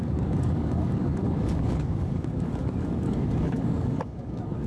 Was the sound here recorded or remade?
remade